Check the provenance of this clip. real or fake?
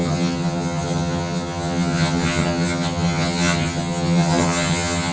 fake